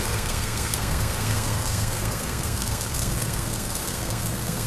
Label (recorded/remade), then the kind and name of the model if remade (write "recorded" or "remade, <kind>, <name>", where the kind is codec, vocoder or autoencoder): remade, codec, SNAC